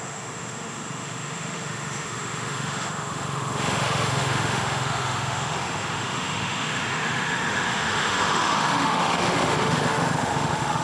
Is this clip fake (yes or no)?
yes